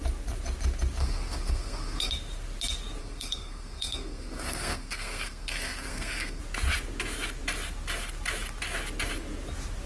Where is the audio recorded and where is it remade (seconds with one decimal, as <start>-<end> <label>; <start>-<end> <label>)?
0.0-1.0 recorded; 1.0-2.1 remade; 2.1-3.0 recorded; 3.0-6.4 remade; 6.4-9.9 recorded